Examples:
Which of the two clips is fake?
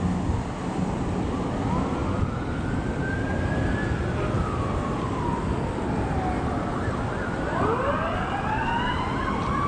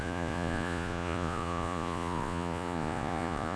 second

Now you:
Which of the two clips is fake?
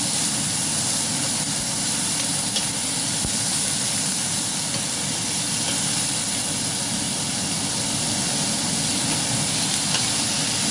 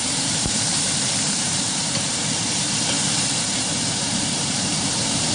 second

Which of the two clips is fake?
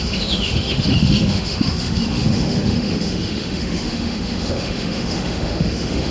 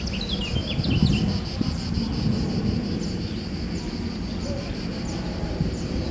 first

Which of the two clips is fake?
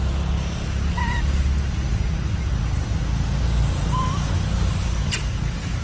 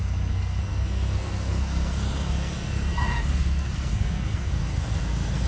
second